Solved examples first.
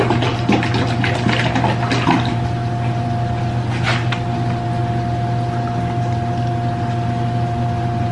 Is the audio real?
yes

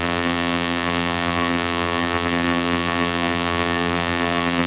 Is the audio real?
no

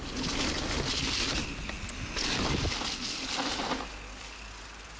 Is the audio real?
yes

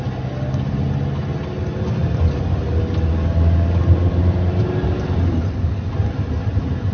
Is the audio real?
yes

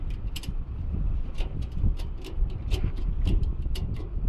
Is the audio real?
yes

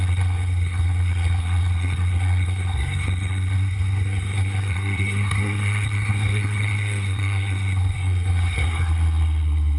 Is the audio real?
no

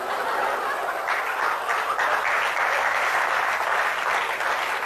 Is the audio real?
no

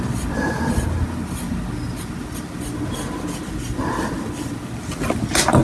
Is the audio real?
yes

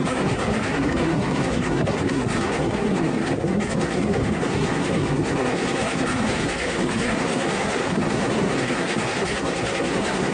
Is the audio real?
no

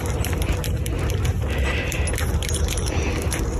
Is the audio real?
yes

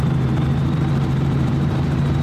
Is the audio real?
no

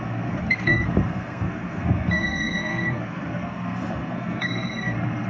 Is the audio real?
no